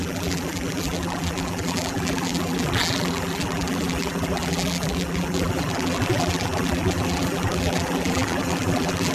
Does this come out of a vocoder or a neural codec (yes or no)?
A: yes